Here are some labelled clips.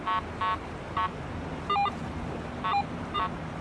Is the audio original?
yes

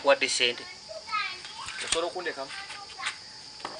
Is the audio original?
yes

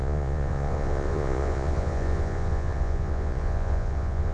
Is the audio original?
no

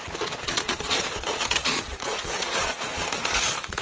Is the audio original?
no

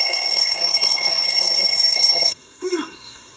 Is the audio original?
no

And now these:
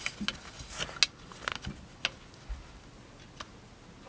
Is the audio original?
yes